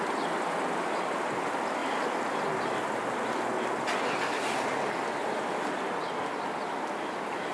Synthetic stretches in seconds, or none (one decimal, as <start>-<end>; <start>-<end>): none

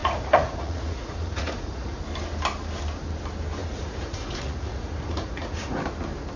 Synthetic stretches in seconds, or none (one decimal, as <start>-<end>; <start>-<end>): 0.0-2.0; 3.6-5.8

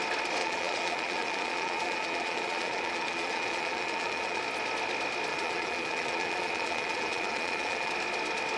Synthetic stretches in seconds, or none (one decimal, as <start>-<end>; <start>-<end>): 0.4-4.4; 5.3-7.9

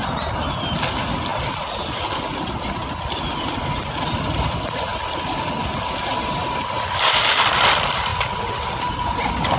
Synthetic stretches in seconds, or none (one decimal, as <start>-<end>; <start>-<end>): none

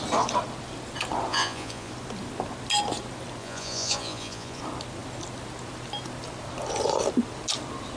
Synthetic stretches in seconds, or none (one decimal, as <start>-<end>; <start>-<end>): 1.3-1.9; 3.4-4.6

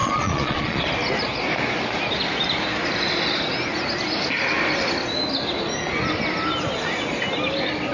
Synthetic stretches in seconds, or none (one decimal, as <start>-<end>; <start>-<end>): 0.0-0.8

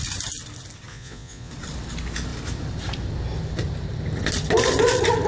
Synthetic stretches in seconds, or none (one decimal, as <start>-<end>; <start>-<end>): 0.9-1.5